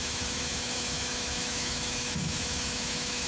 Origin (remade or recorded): remade